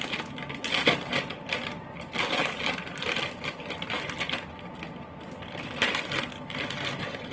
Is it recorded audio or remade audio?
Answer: recorded